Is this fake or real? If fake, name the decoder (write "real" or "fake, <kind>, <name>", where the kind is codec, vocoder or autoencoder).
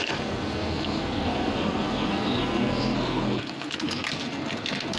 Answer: fake, codec, SNAC